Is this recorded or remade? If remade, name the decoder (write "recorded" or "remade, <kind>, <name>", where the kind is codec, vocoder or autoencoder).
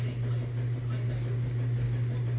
recorded